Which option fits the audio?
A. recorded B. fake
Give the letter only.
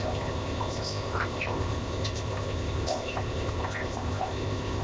B